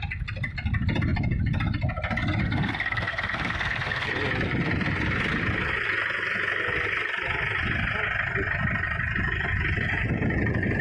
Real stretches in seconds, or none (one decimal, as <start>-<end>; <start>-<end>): 0.0-2.4; 4.1-10.8